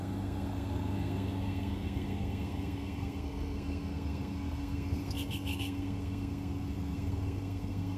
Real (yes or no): no